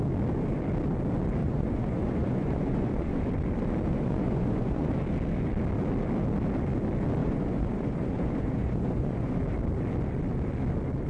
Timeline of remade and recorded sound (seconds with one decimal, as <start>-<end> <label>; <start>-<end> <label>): 0.0-1.4 recorded; 1.4-3.2 remade; 3.2-3.9 recorded; 3.9-4.9 remade; 4.9-7.2 recorded; 7.2-9.4 remade; 9.4-11.1 recorded